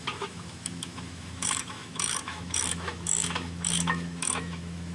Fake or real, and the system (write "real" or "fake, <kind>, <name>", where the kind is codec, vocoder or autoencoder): fake, autoencoder, DAC-VAE